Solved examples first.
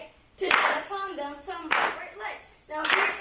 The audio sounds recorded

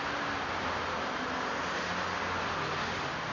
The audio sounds recorded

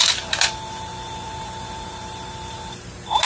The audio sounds remade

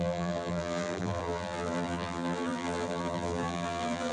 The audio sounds remade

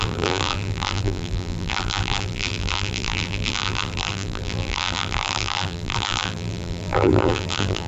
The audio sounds remade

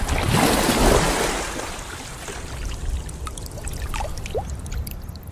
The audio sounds recorded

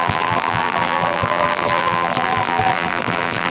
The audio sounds remade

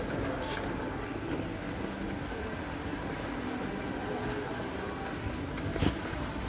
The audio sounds recorded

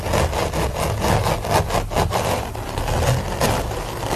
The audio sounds recorded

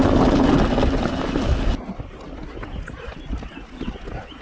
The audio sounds recorded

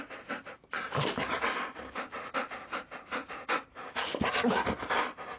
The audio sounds recorded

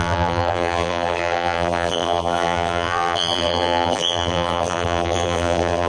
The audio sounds remade